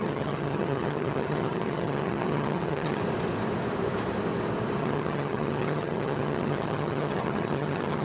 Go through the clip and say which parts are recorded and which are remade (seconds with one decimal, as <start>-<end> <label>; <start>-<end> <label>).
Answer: 0.0-3.0 remade; 3.0-4.8 recorded; 4.8-8.0 remade